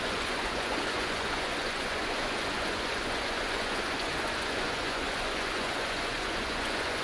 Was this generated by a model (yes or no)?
yes